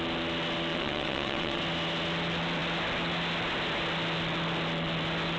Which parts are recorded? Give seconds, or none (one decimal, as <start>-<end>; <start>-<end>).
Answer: 0.0-0.7; 1.6-5.4